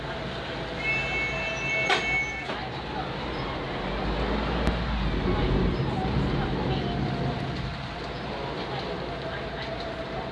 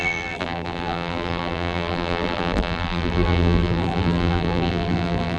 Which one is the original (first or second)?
first